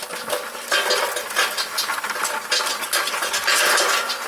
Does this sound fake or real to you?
real